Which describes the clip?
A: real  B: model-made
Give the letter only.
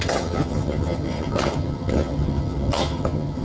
B